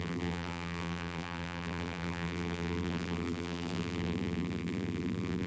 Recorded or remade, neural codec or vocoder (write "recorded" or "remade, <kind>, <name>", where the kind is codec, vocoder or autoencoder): remade, vocoder, BigVGAN v2